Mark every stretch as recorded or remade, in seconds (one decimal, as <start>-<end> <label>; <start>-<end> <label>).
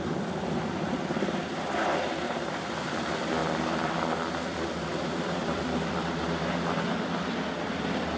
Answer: 0.0-8.2 remade